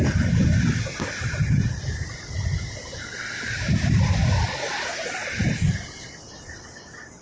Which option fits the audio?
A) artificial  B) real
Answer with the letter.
B